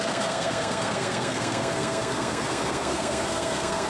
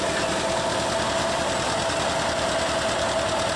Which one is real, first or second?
second